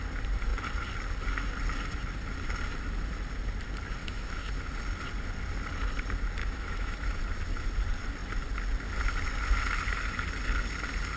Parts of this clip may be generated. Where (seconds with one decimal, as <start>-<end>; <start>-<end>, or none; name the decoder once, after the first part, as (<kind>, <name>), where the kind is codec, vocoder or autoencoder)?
4.0-4.5 (autoencoder, DAC-VAE); 6.4-7.2